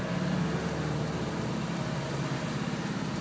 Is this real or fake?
real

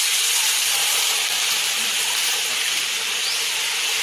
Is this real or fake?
real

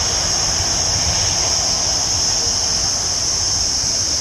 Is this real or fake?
real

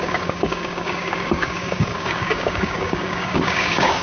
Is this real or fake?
fake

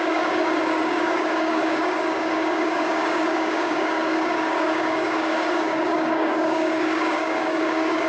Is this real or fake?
fake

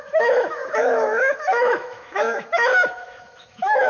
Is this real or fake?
fake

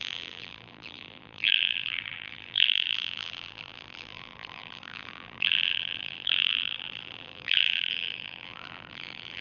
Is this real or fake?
fake